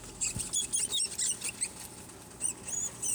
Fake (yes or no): no